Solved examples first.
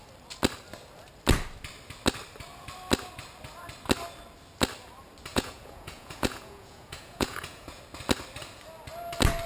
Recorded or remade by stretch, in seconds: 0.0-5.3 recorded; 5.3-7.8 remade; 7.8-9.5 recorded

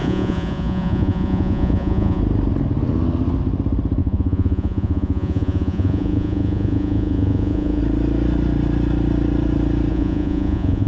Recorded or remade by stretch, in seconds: 0.0-2.2 remade; 2.2-4.0 recorded; 4.0-7.8 remade; 7.8-9.9 recorded; 9.9-10.9 remade

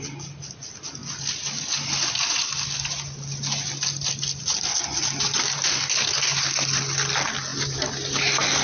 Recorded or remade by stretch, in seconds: 0.0-7.5 recorded; 7.5-8.2 remade; 8.2-8.6 recorded